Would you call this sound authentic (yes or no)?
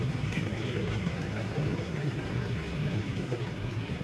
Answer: no